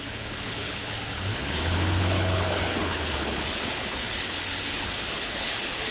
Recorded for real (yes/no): no